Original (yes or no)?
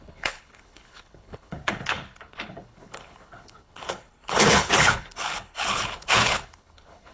no